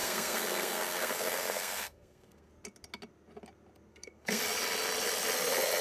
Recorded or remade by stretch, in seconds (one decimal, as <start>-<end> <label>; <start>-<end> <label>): 0.0-2.5 remade; 2.5-3.9 recorded; 3.9-4.4 remade; 4.4-5.8 recorded